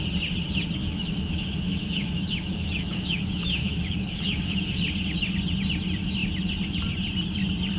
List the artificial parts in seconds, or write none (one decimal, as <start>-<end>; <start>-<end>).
0.8-4.8